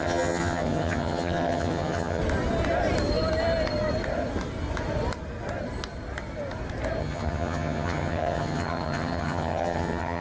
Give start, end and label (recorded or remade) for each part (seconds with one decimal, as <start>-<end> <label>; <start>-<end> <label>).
0.0-2.2 remade; 2.2-7.0 recorded; 7.0-10.2 remade